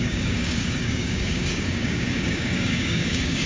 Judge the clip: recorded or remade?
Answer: remade